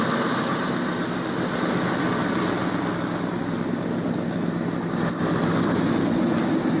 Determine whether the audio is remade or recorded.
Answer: recorded